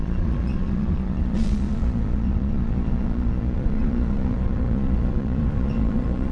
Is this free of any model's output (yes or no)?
no